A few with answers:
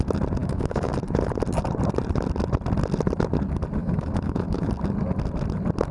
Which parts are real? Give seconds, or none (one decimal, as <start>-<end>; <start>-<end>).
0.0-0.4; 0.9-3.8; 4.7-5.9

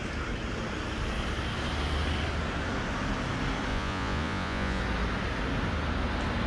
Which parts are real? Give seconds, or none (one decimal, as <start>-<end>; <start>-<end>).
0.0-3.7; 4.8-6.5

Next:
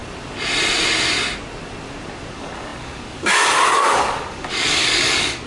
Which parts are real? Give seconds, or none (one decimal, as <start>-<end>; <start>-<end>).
0.0-2.3

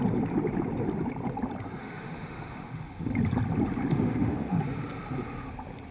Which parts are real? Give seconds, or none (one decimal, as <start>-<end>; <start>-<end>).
0.0-1.8; 3.1-3.9; 4.6-5.9